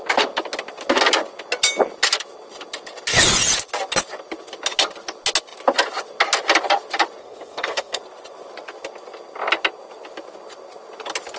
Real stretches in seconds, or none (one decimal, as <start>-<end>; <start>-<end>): 0.0-7.2; 8.0-11.4